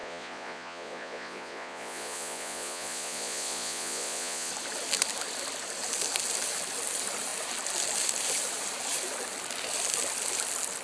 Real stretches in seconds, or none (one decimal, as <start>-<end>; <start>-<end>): 4.5-10.8